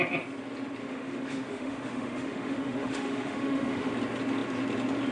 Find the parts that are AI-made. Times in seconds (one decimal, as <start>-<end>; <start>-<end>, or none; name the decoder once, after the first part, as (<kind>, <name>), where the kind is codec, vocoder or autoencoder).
0.8-3.9 (autoencoder, DAC-VAE)